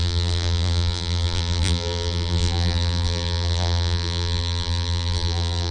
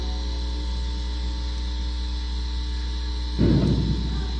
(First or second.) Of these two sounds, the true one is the second